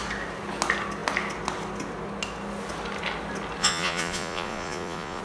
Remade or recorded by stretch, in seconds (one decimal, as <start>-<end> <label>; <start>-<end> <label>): 0.0-3.6 recorded; 3.6-5.2 remade